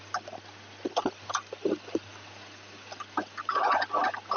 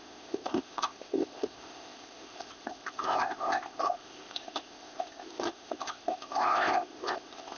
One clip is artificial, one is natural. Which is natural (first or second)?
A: first